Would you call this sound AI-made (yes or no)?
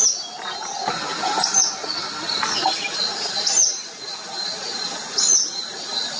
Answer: no